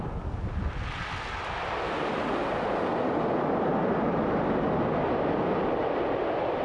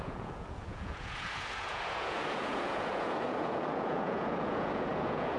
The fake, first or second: second